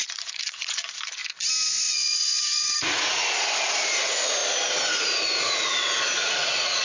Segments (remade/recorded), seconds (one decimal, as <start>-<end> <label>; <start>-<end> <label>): 0.0-1.2 remade; 1.2-1.7 recorded; 1.7-3.1 remade; 3.1-4.0 recorded; 4.0-4.4 remade; 4.4-4.9 recorded; 4.9-6.8 remade